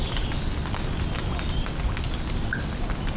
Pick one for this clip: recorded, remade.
recorded